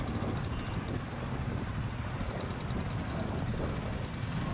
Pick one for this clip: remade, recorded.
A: recorded